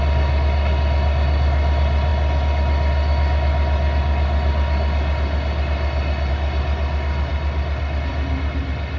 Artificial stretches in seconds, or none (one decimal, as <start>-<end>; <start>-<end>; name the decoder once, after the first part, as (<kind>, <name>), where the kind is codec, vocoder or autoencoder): none